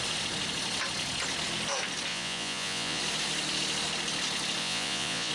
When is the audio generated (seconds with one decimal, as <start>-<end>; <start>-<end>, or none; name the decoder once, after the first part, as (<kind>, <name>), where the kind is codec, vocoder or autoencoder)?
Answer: 2.1-3.0 (vocoder, Vocos); 4.6-5.3